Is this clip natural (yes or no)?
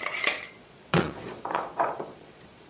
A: no